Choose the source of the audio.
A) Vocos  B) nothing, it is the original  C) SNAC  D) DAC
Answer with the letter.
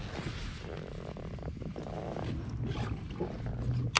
B